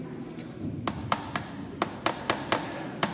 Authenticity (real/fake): real